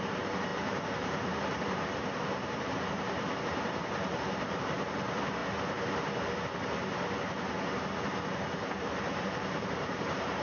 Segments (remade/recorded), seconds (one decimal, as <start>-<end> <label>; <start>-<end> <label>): 0.0-5.4 remade; 5.4-8.8 recorded; 8.8-10.4 remade